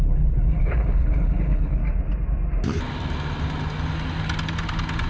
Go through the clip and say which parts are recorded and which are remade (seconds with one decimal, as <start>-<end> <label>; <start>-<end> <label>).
0.0-1.8 remade; 1.8-5.1 recorded